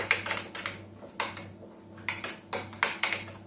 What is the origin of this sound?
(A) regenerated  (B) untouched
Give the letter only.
B